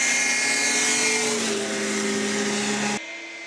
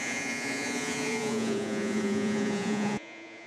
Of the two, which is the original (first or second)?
first